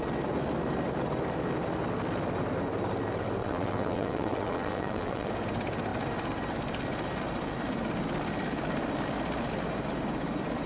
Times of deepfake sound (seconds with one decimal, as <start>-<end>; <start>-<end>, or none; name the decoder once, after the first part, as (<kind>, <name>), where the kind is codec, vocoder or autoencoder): 3.4-5.3 (vocoder, WaveNeXt)